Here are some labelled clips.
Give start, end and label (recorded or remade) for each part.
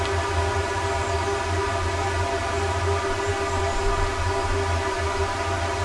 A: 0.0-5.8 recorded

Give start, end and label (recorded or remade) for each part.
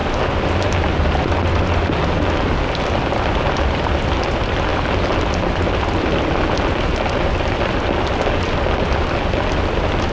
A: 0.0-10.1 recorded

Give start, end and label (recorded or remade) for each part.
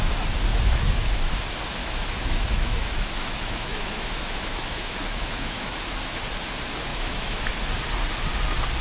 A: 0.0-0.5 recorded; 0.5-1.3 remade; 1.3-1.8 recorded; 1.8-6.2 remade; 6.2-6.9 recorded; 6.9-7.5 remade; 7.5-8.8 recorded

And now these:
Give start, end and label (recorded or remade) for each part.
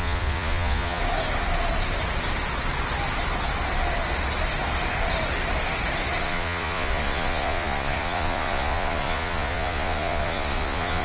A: 0.0-1.0 remade; 1.0-6.2 recorded; 6.2-11.0 remade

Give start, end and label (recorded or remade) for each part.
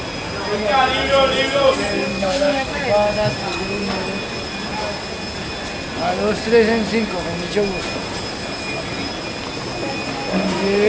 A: 0.0-2.1 recorded; 2.1-2.8 remade; 2.8-10.9 recorded